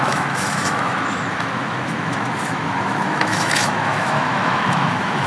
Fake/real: fake